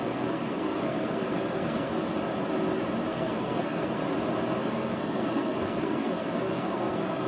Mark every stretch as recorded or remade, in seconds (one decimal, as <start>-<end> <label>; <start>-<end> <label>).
0.0-2.1 remade; 2.1-3.1 recorded; 3.1-4.0 remade; 4.0-4.6 recorded; 4.6-7.3 remade